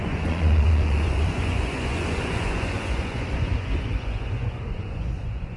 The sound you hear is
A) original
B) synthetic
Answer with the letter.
B